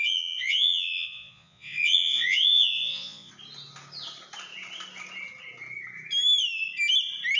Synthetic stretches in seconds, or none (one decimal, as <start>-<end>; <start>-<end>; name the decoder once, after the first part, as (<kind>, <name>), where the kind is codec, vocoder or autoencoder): 0.0-3.3 (vocoder, Vocos)